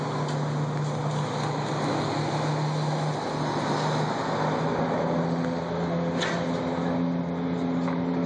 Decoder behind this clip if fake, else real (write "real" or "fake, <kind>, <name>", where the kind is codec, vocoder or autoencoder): real